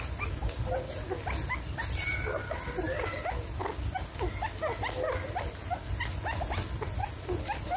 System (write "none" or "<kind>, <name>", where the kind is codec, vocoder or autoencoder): none